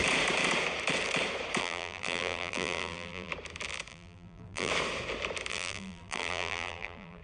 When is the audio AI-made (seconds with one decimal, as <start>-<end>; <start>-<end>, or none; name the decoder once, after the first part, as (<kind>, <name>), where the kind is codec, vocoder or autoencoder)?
1.6-3.3 (vocoder, BigVGAN v2); 3.9-4.7; 5.5-7.2